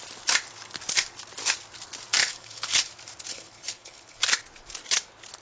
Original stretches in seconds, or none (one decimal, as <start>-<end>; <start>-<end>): 0.0-2.2; 2.9-3.3; 4.2-5.4